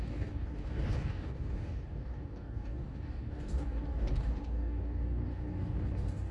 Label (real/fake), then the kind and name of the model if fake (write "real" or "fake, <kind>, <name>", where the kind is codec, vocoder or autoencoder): fake, codec, DAC